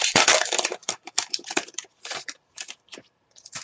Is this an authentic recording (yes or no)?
no